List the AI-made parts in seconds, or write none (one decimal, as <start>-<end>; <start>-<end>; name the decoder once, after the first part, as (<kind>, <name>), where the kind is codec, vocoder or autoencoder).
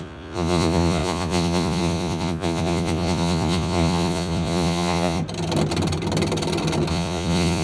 0.0-5.2 (vocoder, Vocos); 6.9-7.6